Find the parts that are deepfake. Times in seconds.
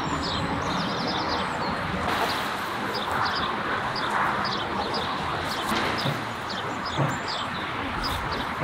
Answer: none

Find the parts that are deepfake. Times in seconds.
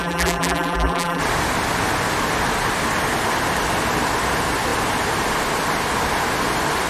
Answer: 0.0-1.2 (vocoder, BigVGAN v2)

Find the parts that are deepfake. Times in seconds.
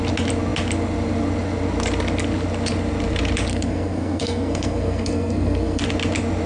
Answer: 3.5-5.8 (codec, SNAC)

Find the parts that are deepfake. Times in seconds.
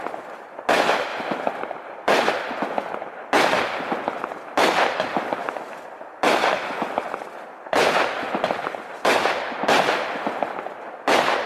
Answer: 1.1-2.3 (vocoder, BigVGAN v2)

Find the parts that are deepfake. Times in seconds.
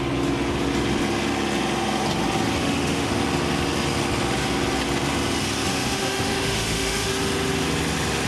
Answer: 2.6-3.1 (autoencoder, DAC-VAE); 5.7-7.1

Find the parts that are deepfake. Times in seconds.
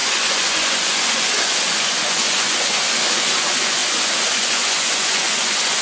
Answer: 0.0-5.8 (vocoder, Vocos)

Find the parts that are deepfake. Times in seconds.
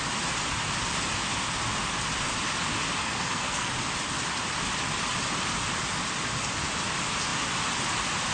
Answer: 3.0-3.7 (codec, SNAC)